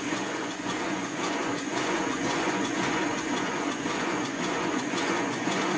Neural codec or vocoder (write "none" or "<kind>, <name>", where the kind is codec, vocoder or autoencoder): vocoder, Vocos